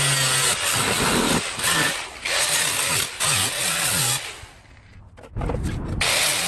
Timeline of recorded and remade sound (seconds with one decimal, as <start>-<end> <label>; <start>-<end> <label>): 0.0-6.5 recorded